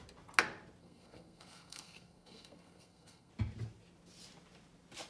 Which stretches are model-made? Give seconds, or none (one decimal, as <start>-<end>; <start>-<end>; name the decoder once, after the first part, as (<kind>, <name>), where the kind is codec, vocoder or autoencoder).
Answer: 0.8-3.3 (codec, SNAC)

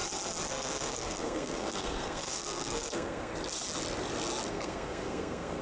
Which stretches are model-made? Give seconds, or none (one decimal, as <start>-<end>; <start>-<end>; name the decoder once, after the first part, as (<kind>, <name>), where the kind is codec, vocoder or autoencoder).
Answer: 0.5-3.3 (codec, SNAC); 4.5-5.6

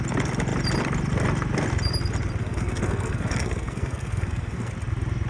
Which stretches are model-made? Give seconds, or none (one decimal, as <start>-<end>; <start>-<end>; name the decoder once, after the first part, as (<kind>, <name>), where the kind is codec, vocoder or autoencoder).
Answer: 2.4-4.7 (codec, SNAC)

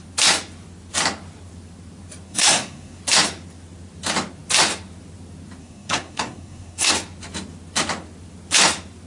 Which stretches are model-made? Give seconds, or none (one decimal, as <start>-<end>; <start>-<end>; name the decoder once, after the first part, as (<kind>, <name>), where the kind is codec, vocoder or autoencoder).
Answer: 2.3-3.0 (codec, SNAC); 5.6-6.9

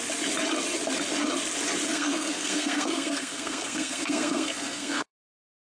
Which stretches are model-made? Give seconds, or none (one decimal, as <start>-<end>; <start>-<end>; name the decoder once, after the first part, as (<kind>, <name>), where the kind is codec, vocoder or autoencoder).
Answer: 1.9-5.1 (codec, SNAC)

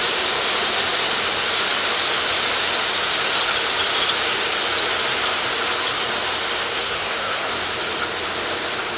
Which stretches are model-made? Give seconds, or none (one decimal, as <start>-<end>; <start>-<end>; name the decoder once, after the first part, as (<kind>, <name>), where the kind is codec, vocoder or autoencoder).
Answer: 6.7-7.5 (codec, SNAC)

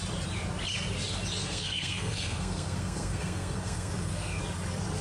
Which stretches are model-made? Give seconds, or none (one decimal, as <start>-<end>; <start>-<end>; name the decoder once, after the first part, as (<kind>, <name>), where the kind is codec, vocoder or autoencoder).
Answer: 1.4-4.4 (codec, SNAC)

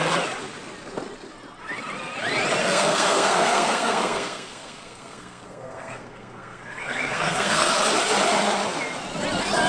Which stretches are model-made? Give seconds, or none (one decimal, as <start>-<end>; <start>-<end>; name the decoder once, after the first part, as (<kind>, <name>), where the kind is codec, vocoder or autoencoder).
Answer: 2.6-7.7 (codec, SNAC)